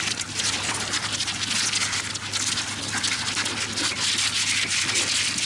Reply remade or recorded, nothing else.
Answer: recorded